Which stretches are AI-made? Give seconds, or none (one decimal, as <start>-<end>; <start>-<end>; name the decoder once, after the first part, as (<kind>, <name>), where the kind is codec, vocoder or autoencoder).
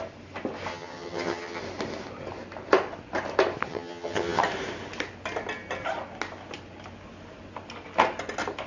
0.7-1.6 (vocoder, HiFi-GAN); 3.7-4.4